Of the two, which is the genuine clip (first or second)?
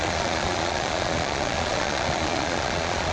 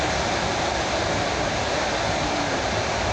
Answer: second